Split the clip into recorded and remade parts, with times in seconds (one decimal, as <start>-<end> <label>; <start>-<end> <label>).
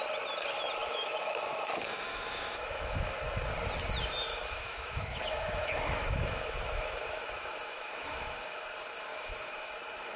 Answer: 0.0-0.8 recorded; 0.8-3.1 remade; 3.1-4.3 recorded; 4.3-8.6 remade; 8.6-9.1 recorded; 9.1-9.7 remade; 9.7-10.2 recorded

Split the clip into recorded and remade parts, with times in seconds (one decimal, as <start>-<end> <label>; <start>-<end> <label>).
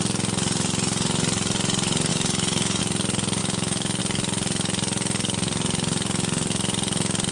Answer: 0.0-2.1 recorded; 2.1-2.8 remade; 2.8-3.4 recorded; 3.4-4.0 remade; 4.0-7.3 recorded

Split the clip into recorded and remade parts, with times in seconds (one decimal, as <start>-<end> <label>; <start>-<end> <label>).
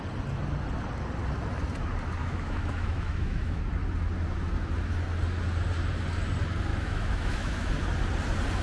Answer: 0.0-2.2 recorded; 2.2-3.6 remade; 3.6-6.7 recorded; 6.7-7.7 remade; 7.7-8.6 recorded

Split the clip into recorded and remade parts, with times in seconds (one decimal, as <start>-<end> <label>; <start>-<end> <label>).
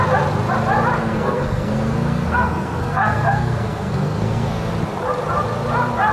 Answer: 0.0-1.0 recorded; 1.0-4.7 remade; 4.7-6.1 recorded